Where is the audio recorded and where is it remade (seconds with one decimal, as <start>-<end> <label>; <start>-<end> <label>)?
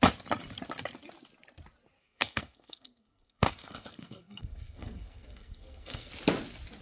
0.0-2.0 recorded; 2.0-6.1 remade; 6.1-6.8 recorded